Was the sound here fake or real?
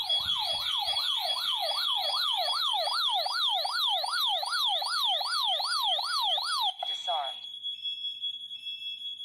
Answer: real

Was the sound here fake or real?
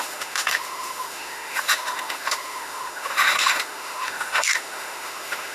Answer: fake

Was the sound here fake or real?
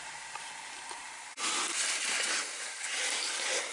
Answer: real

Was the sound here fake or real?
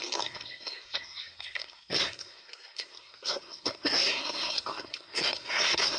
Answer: fake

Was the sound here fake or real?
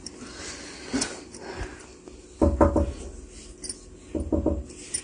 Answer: real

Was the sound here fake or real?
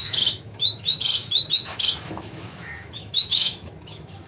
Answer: fake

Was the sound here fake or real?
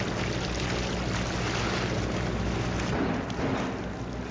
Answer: real